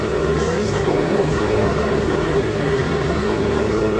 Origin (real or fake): fake